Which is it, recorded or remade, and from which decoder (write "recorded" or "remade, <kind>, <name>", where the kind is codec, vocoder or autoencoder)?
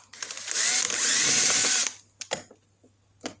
recorded